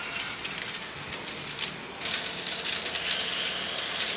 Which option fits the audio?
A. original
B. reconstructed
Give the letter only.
A